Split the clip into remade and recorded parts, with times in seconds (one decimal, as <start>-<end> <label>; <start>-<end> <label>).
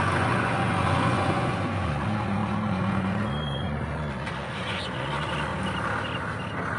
0.0-5.5 remade; 5.5-6.8 recorded